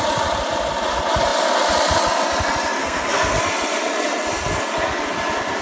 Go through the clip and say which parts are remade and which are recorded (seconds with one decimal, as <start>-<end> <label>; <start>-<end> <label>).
0.0-2.8 recorded; 2.8-3.4 remade; 3.4-5.6 recorded